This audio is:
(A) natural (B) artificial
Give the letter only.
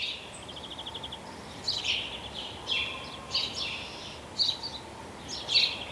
A